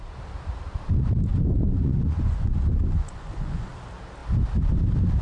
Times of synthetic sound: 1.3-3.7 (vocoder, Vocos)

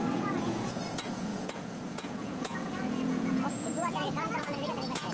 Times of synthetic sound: 0.0-5.1 (vocoder, Vocos)

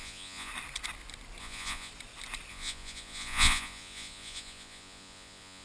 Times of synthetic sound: 0.0-0.5 (vocoder, Vocos); 1.4-1.9; 2.5-5.6

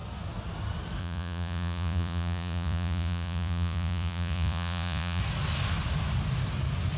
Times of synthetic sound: 1.0-5.2 (vocoder, Vocos)

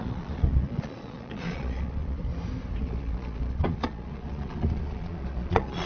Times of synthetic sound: 0.0-2.2 (vocoder, Vocos); 2.8-5.9